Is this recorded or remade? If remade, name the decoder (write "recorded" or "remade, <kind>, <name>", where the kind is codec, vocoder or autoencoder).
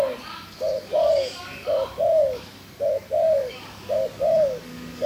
remade, codec, DAC